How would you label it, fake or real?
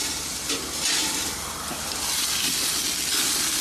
real